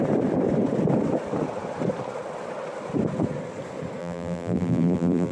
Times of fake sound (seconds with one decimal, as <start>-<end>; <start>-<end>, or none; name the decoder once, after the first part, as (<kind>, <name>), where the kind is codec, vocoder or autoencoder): 4.0-5.3 (vocoder, BigVGAN v2)